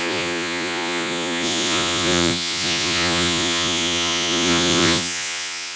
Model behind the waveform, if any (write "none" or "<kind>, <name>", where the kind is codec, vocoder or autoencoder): vocoder, Vocos